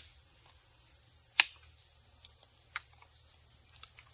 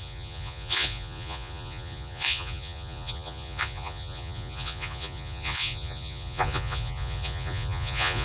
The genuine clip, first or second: first